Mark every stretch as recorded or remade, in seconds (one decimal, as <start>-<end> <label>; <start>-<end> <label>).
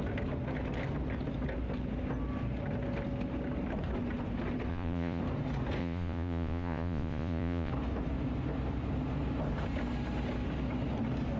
0.0-4.7 recorded; 4.7-5.2 remade; 5.2-5.8 recorded; 5.8-7.7 remade; 7.7-11.4 recorded